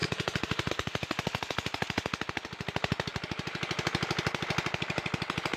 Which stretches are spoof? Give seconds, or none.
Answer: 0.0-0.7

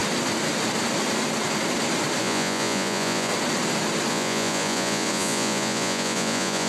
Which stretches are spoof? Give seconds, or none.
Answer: 2.2-3.3; 4.1-6.7

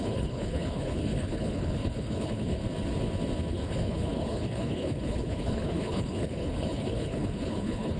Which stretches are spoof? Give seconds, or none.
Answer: 0.0-2.6; 3.5-8.0

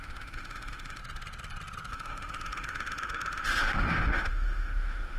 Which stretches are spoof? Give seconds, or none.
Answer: 0.0-1.0; 1.9-5.2

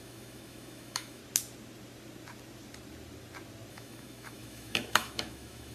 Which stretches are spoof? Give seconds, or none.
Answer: 0.0-1.2; 3.7-5.7